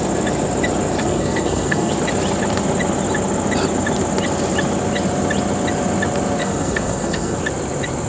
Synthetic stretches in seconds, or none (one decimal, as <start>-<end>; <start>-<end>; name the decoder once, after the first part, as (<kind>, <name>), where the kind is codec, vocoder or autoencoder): 1.0-1.9 (codec, SNAC); 6.4-7.4